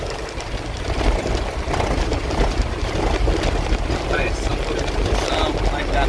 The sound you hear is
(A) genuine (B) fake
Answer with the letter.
A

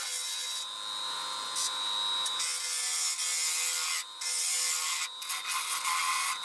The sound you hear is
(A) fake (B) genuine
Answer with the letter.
B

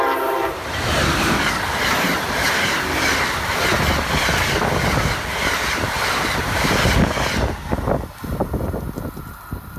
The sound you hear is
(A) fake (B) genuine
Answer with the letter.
B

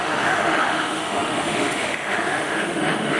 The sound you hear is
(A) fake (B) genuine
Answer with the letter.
A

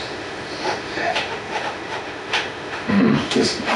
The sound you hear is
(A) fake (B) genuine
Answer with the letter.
A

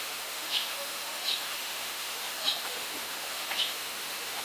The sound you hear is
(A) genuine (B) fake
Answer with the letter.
B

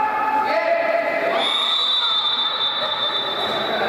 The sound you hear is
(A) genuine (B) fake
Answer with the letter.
A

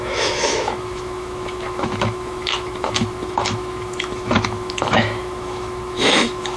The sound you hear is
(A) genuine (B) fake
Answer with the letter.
B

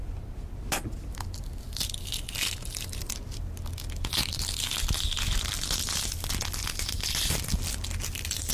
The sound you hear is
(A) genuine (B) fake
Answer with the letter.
A